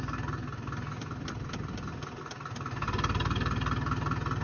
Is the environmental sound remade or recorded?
recorded